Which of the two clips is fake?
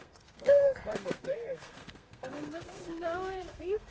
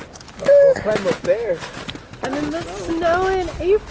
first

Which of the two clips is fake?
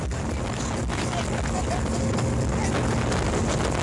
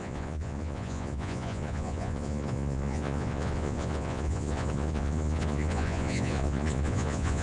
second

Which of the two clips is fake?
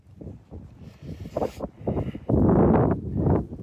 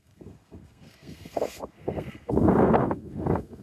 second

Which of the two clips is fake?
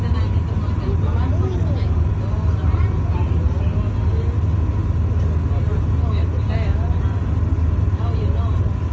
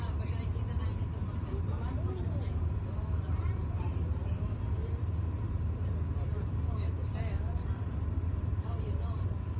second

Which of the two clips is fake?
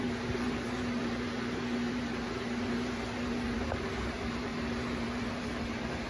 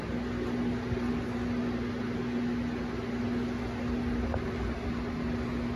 first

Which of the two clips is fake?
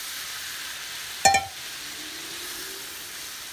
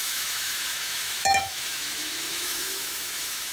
second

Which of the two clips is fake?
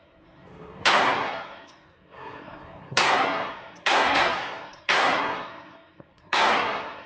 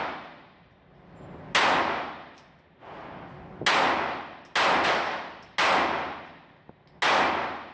first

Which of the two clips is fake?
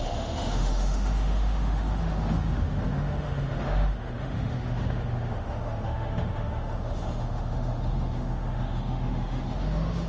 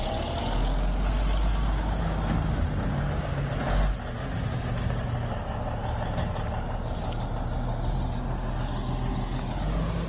first